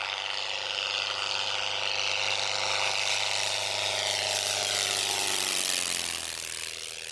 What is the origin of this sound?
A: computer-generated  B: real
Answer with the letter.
B